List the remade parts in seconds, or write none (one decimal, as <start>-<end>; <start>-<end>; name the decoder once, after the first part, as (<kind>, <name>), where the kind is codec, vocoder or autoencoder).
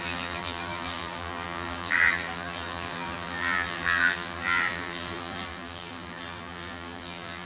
0.0-7.4 (vocoder, BigVGAN v2)